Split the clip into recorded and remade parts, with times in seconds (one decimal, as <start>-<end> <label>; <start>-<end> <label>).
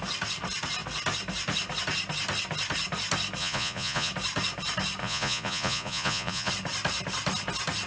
0.0-3.4 recorded; 3.4-4.1 remade; 4.1-5.0 recorded; 5.0-6.5 remade; 6.5-7.9 recorded